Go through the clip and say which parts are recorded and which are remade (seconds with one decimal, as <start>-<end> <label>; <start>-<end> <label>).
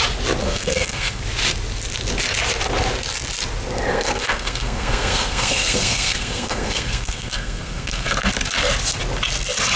0.0-0.4 recorded; 0.4-1.2 remade; 1.2-3.9 recorded; 3.9-8.3 remade; 8.3-9.8 recorded